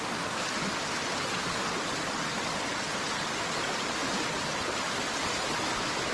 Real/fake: real